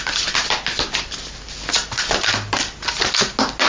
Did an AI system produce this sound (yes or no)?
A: no